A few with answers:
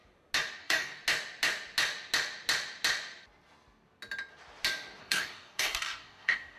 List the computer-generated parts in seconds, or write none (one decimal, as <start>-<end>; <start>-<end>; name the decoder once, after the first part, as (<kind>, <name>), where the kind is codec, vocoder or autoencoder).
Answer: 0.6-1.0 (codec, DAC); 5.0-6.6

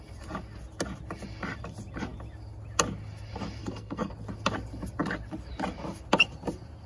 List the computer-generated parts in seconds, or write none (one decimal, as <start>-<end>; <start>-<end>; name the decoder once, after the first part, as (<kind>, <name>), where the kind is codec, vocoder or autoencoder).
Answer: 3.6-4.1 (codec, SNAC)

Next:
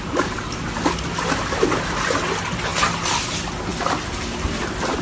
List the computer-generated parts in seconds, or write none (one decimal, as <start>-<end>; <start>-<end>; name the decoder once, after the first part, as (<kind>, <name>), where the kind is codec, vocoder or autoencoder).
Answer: none

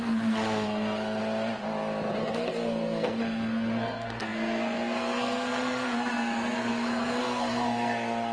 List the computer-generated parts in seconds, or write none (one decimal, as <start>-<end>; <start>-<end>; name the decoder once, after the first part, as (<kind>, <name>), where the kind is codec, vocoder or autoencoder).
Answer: 0.0-1.2 (codec, SNAC); 2.2-8.3

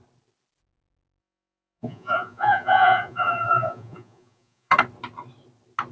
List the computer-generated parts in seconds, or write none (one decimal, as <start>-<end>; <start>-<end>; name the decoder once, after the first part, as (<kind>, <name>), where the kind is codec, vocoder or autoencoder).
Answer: 1.2-4.7 (vocoder, Vocos)

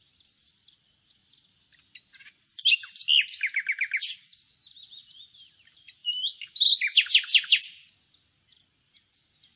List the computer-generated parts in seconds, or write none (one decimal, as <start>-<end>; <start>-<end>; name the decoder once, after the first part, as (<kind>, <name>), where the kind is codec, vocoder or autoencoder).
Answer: 0.0-1.2 (vocoder, BigVGAN v2); 4.0-9.6